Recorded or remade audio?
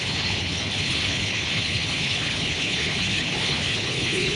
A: remade